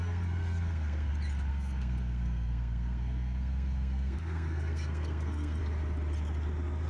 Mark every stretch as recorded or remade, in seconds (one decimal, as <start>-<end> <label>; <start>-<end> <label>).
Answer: 0.0-1.1 remade; 1.1-1.5 recorded; 1.5-5.6 remade; 5.6-6.9 recorded